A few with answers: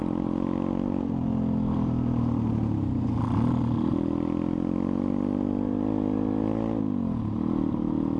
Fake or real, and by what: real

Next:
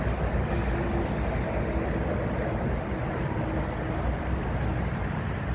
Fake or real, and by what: real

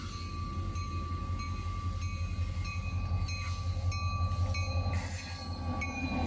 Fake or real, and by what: real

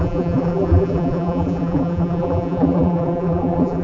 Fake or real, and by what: fake, vocoder, BigVGAN v2